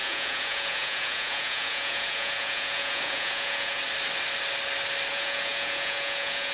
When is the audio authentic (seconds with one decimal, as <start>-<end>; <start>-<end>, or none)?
3.8-5.1